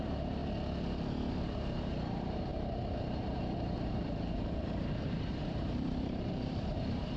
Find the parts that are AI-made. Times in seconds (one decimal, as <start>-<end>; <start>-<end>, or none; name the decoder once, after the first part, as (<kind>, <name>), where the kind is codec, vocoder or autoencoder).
0.0-0.4 (vocoder, BigVGAN v2); 1.3-7.2